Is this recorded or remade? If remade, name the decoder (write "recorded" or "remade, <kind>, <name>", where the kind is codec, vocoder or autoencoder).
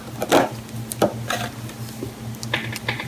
recorded